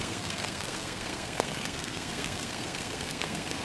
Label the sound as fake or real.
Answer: fake